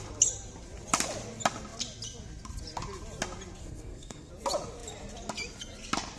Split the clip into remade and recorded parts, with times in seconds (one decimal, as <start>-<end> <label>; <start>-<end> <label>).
0.0-3.6 recorded; 3.6-4.3 remade; 4.3-6.2 recorded